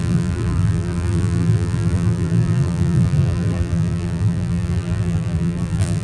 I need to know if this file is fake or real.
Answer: fake